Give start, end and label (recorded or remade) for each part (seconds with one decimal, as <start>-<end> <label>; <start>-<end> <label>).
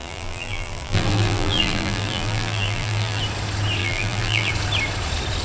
0.0-3.2 remade; 3.2-3.8 recorded; 3.8-4.5 remade; 4.5-5.4 recorded